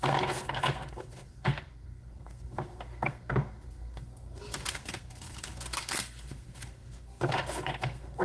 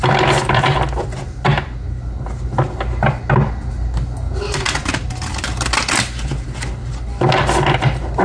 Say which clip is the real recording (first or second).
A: second